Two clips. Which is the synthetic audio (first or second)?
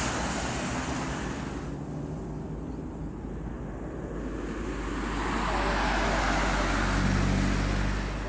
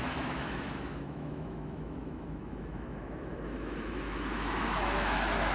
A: second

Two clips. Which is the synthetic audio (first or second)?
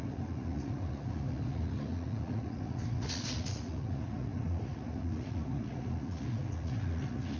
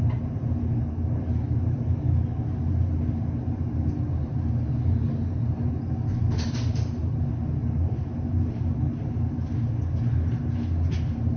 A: first